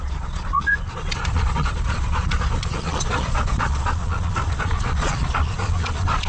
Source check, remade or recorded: remade